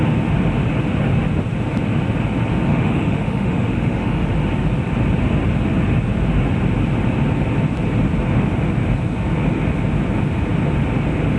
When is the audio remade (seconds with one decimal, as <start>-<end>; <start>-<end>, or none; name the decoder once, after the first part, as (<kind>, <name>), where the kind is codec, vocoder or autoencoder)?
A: 2.7-4.3 (autoencoder, DAC-VAE)